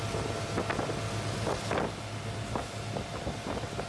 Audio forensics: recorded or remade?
recorded